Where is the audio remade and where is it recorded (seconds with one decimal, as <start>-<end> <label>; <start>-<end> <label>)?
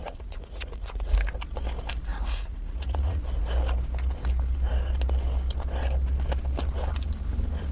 0.0-1.1 remade; 1.1-2.1 recorded; 2.1-3.2 remade; 3.2-7.7 recorded